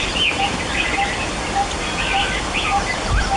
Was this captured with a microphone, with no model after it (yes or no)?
yes